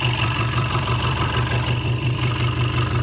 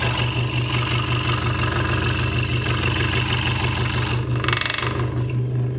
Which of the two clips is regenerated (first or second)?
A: first